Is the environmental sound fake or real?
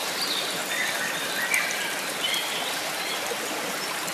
real